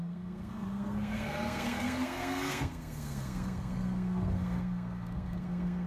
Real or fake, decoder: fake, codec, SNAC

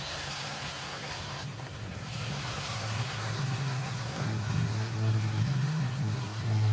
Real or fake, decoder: fake, codec, SNAC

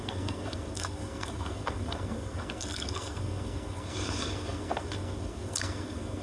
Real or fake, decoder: fake, codec, SNAC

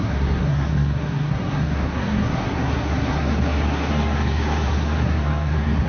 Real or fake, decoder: fake, codec, SNAC